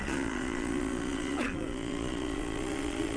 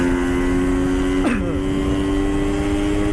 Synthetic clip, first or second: first